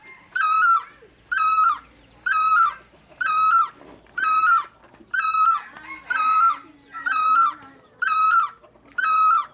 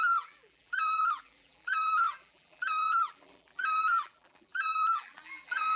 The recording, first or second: first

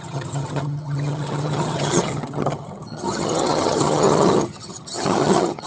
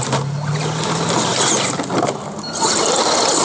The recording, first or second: second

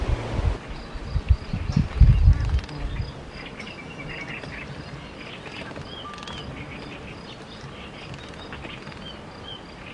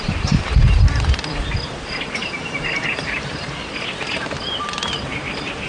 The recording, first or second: first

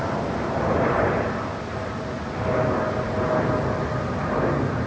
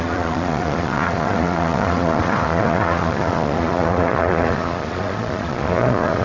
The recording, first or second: first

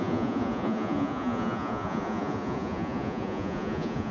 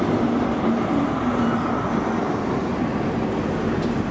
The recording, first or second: second